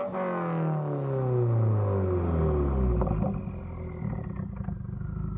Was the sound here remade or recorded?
recorded